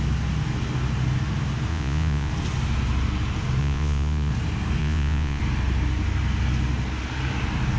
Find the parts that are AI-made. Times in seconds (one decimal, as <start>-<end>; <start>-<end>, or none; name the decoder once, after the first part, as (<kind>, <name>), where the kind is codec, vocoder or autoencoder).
1.7-2.3 (vocoder, Vocos); 3.6-4.3; 4.8-5.4